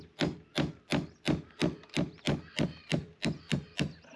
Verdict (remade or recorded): recorded